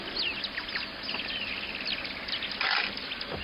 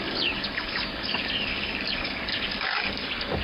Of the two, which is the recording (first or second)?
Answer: first